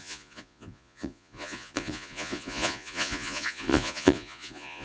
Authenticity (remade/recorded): remade